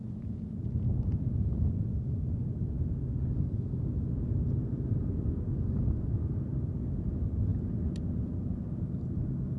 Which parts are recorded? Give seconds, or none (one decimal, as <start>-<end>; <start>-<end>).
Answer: 0.5-9.6